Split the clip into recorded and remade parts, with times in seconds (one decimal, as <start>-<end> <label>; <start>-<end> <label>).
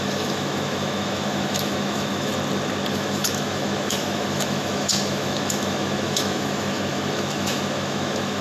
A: 0.0-2.3 remade; 2.3-2.9 recorded; 2.9-8.4 remade